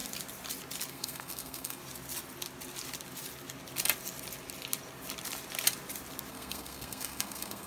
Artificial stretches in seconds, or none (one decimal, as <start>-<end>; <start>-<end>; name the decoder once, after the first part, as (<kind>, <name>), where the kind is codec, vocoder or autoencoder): 0.9-1.8 (codec, SNAC); 6.3-7.7